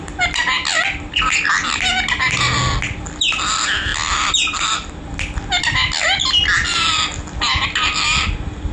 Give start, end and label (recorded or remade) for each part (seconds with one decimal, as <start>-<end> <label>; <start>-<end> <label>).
0.0-8.7 recorded